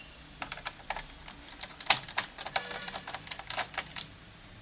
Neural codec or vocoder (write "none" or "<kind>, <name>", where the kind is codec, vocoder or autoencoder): vocoder, BigVGAN v2